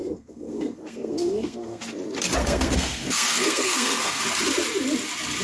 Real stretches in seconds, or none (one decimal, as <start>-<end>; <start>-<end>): 1.8-2.4; 4.2-5.4